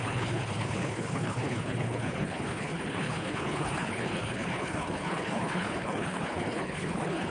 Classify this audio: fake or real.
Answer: fake